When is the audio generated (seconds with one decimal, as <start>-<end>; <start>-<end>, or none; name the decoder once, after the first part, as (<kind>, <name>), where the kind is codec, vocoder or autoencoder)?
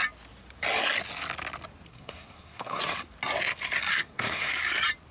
1.9-2.8 (codec, SNAC); 3.9-4.5